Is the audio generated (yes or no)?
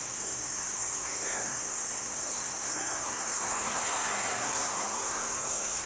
yes